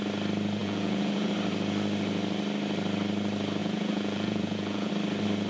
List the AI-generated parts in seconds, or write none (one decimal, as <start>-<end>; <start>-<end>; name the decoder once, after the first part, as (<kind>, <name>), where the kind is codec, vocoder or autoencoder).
0.6-1.3 (vocoder, Vocos); 3.6-4.9

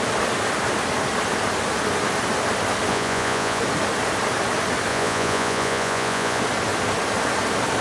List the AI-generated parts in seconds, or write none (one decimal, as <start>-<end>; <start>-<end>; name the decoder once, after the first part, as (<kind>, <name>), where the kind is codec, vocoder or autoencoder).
2.9-3.6 (vocoder, Vocos); 4.9-6.4

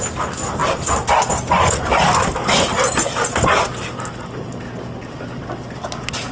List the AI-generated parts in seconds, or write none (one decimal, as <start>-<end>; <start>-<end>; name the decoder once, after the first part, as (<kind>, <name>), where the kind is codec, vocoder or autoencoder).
none

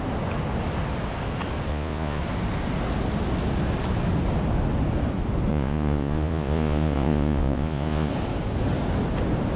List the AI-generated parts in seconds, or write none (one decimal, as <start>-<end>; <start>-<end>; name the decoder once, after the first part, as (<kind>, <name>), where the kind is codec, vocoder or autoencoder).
1.7-2.2 (vocoder, Vocos); 5.5-8.1

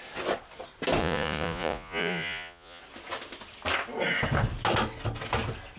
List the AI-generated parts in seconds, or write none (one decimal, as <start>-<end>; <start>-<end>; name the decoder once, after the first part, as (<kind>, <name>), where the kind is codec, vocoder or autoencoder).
1.0-2.8 (vocoder, Vocos)